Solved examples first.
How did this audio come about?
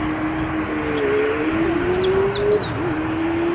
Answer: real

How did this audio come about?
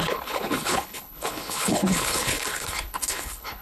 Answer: fake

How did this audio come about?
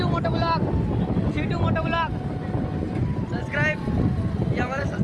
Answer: real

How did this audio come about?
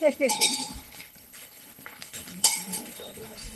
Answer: fake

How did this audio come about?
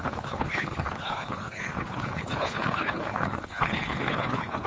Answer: fake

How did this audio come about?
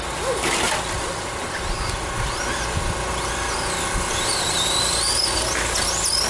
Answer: real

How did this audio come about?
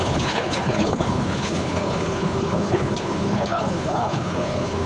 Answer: fake